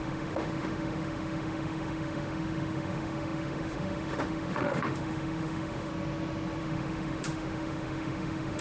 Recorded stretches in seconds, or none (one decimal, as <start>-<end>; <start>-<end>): 5.9-6.6